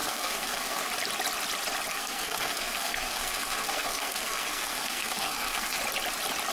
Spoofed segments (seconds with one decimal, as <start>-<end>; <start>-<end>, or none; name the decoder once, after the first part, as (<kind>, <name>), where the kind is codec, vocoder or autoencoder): 0.0-0.9 (codec, SNAC); 1.9-5.8

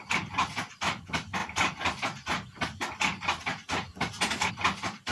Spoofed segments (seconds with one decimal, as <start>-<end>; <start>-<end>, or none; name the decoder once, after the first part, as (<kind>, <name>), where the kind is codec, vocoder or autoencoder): none

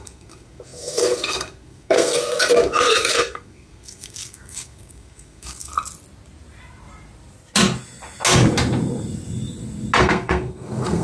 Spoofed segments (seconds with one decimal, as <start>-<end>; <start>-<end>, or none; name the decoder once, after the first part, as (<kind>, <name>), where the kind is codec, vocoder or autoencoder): 0.0-5.7 (codec, SNAC); 10.0-11.0

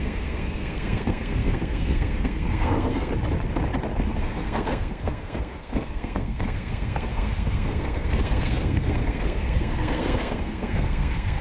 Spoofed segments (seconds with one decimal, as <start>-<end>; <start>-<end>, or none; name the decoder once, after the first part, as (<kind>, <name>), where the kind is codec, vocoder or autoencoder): 0.0-3.1 (codec, SNAC); 4.2-11.4

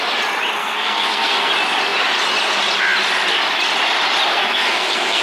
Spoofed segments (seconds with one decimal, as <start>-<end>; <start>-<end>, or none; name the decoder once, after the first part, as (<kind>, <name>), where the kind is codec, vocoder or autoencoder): 0.6-1.5 (codec, SNAC); 4.3-5.2

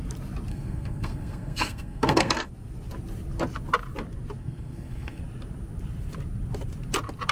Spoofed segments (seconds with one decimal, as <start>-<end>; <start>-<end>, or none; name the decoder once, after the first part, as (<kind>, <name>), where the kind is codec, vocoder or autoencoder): 0.5-2.5 (codec, SNAC); 4.4-5.2

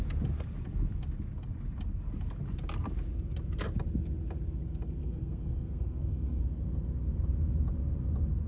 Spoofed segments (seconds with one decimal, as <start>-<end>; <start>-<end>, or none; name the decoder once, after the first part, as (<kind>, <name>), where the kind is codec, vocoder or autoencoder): 5.0-6.4 (codec, SNAC)